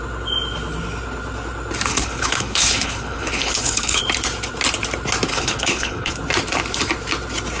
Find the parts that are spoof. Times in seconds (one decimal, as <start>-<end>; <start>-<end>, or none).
1.9-4.0; 5.3-6.1